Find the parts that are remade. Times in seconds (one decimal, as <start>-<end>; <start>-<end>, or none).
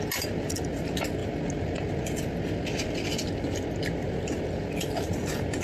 none